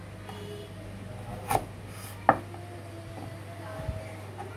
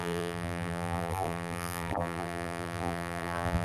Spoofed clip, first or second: second